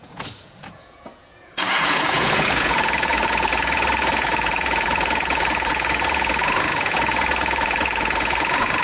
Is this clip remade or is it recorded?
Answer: remade